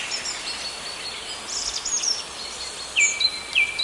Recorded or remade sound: recorded